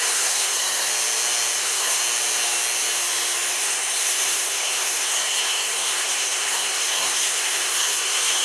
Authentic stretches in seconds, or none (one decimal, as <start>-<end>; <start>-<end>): 0.9-1.6; 2.0-3.5